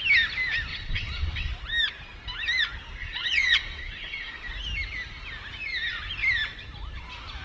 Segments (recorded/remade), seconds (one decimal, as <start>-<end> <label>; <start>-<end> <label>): 0.0-0.7 recorded; 0.7-1.5 remade; 1.5-3.0 recorded; 3.0-4.3 remade; 4.3-7.4 recorded